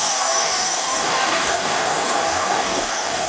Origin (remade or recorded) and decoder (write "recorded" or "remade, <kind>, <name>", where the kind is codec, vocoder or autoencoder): remade, codec, DAC